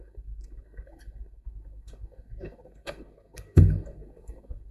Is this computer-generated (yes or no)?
yes